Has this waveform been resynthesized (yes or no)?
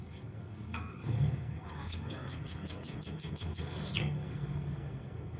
yes